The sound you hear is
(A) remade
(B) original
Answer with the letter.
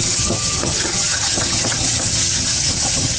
A